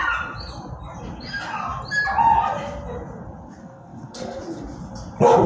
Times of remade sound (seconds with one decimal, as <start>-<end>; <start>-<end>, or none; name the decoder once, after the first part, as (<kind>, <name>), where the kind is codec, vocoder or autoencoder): 3.6-4.4 (codec, SNAC)